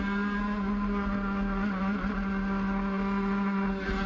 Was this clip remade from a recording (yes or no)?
no